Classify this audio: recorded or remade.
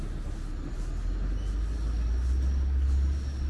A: recorded